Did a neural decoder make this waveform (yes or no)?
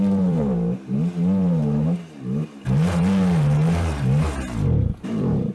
yes